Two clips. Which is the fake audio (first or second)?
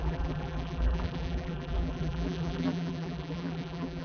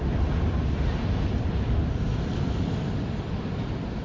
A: first